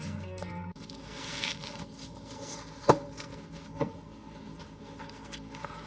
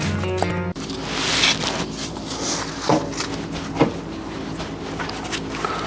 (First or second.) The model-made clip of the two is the first